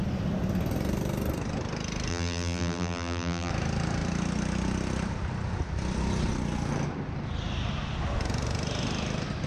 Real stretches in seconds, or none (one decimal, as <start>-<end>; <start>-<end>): 0.0-2.1; 3.5-9.5